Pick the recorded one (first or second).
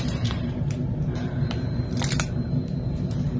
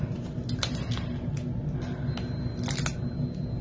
second